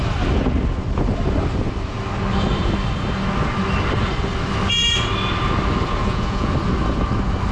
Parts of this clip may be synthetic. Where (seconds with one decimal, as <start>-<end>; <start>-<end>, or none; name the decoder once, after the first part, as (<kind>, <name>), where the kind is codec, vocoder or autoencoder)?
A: 6.0-6.5 (vocoder, Vocos)